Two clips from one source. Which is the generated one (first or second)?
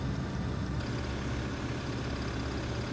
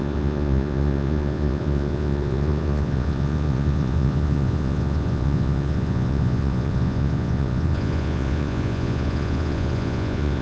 second